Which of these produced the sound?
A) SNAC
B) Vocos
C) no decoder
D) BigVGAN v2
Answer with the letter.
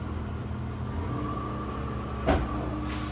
C